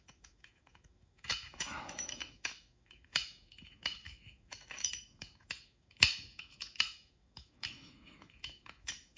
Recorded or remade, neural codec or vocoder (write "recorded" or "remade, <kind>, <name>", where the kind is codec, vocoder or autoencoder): remade, autoencoder, DAC-VAE